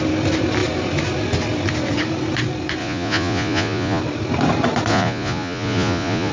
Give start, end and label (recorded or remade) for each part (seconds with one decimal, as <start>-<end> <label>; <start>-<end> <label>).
0.0-2.8 recorded; 2.8-4.0 remade; 4.0-4.9 recorded; 4.9-6.3 remade